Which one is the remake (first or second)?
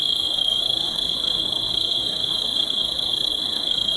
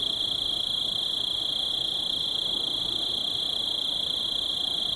first